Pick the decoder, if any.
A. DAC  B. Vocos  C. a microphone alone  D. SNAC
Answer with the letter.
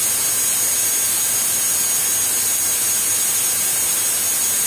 C